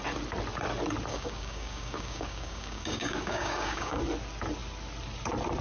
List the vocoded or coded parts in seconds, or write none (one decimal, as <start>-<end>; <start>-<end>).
1.1-4.0